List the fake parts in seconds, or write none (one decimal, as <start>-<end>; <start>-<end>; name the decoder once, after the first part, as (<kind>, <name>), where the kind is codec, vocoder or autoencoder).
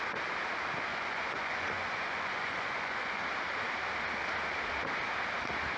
0.9-3.2 (vocoder, Vocos)